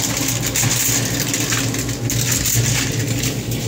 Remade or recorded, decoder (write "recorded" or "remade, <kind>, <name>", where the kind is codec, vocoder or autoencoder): recorded